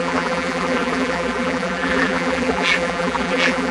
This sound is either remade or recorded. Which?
remade